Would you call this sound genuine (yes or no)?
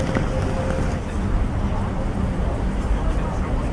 yes